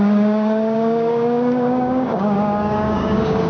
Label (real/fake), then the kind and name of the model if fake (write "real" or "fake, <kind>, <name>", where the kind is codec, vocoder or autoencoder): fake, codec, DAC